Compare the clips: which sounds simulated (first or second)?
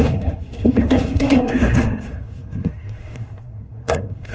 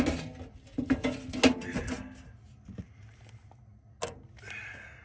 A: first